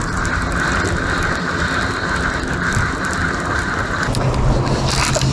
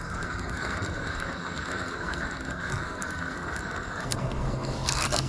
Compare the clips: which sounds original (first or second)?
first